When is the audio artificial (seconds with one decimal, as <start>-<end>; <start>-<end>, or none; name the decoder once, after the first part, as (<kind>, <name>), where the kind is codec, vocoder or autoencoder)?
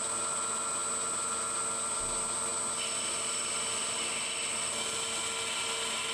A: none